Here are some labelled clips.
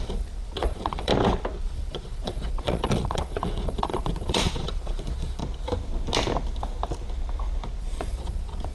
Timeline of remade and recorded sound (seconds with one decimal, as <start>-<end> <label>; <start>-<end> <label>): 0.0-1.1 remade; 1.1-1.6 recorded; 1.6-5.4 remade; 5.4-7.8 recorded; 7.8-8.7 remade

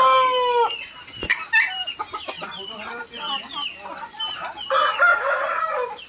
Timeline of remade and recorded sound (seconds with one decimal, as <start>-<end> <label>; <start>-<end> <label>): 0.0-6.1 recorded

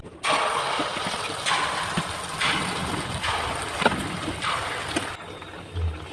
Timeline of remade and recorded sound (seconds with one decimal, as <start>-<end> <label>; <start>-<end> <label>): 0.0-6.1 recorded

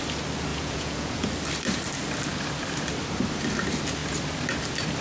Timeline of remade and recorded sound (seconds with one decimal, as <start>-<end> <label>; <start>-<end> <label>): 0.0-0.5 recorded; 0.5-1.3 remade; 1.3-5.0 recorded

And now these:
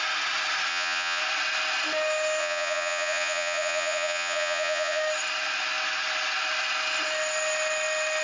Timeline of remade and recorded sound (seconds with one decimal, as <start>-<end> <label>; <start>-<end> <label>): 0.0-0.7 recorded; 0.7-1.2 remade; 1.2-2.4 recorded; 2.4-5.0 remade; 5.0-8.2 recorded